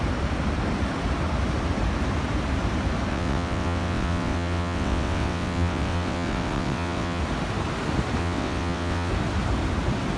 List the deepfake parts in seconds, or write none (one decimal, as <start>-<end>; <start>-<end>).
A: 3.1-7.2; 8.2-9.1